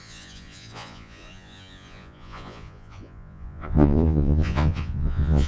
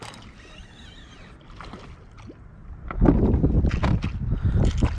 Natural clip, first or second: second